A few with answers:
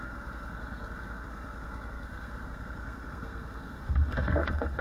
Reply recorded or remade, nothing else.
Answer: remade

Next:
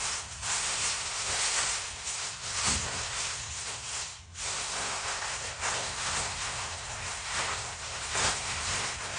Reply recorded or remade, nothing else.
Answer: remade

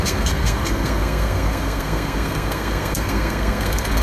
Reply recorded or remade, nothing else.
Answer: remade